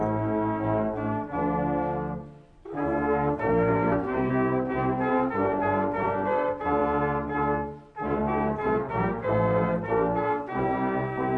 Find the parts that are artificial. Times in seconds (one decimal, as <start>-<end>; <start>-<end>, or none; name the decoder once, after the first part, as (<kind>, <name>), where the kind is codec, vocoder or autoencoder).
3.5-4.3 (codec, SNAC)